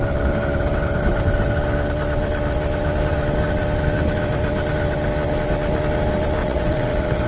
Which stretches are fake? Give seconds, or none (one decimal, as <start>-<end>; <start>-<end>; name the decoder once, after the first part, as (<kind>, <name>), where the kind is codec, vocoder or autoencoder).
6.4-7.3 (vocoder, WaveNeXt)